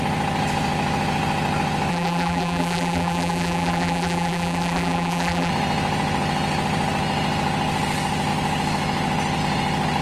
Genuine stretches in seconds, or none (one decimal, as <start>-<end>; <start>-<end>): 0.0-1.9; 5.5-10.0